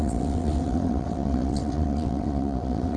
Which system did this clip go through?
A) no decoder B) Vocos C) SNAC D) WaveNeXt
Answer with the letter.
D